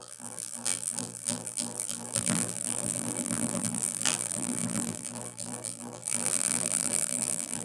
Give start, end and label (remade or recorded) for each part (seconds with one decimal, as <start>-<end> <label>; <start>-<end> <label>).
0.0-7.6 remade